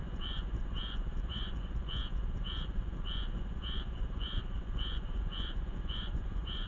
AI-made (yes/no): yes